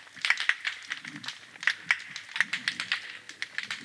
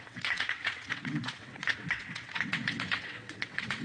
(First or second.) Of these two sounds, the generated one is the second